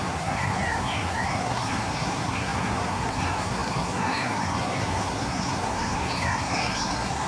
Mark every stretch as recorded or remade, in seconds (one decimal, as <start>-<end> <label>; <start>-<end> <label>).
0.0-7.3 remade